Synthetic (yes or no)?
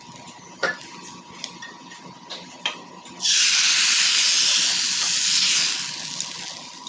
no